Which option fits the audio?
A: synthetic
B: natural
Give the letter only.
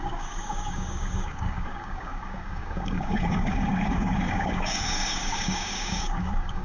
A